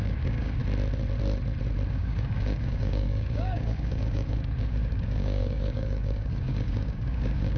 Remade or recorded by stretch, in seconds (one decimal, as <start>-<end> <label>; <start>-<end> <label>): 0.0-0.6 remade; 0.6-1.9 recorded; 1.9-7.6 remade